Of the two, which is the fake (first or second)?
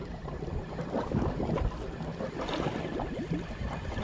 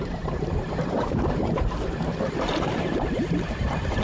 second